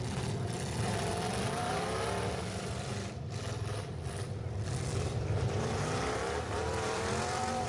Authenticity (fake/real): fake